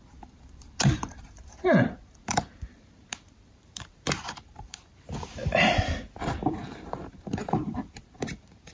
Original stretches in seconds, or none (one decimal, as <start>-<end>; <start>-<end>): 5.4-6.5